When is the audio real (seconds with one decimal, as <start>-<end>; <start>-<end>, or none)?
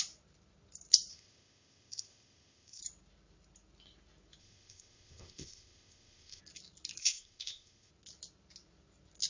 0.0-1.1; 2.8-4.4; 6.4-7.0; 7.9-9.3